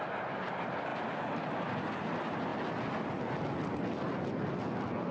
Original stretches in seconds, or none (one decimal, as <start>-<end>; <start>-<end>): 0.0-5.1